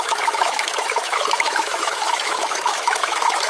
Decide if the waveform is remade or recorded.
remade